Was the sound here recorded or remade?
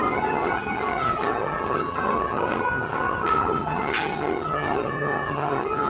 remade